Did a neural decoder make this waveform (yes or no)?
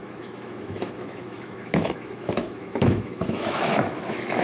yes